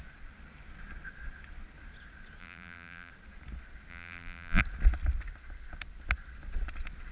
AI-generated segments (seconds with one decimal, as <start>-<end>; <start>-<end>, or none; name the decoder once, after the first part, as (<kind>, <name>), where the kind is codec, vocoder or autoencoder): 2.4-3.1 (vocoder, BigVGAN v2); 3.9-4.6